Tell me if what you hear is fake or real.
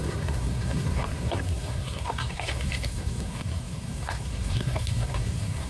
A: fake